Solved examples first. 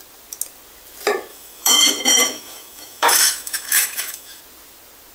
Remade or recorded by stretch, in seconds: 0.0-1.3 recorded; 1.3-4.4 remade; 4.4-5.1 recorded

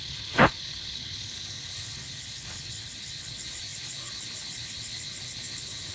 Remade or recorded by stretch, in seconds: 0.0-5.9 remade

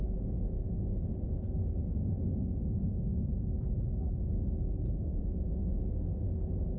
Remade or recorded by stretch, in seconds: 0.0-6.8 remade

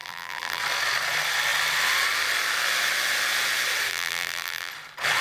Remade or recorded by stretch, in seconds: 0.0-0.6 remade; 0.6-3.9 recorded; 3.9-4.7 remade; 4.7-5.2 recorded

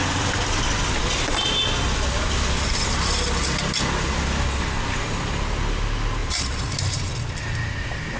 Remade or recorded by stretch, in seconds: 0.0-6.2 recorded; 6.2-7.1 remade; 7.1-8.2 recorded

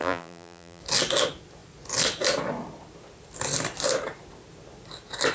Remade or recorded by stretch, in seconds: 0.0-0.8 remade; 0.8-5.3 recorded

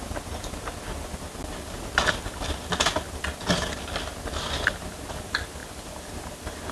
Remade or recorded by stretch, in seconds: 0.0-1.4 recorded; 1.4-1.9 remade; 1.9-5.6 recorded; 5.6-6.7 remade